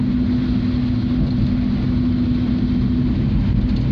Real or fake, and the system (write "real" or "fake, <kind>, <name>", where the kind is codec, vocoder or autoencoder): real